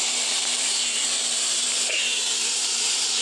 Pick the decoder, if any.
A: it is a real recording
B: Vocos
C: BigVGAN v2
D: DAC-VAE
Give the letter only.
C